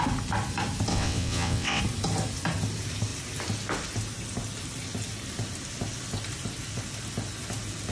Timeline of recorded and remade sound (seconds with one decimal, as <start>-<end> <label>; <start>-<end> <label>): 0.0-0.9 recorded; 0.9-1.8 remade; 1.8-7.9 recorded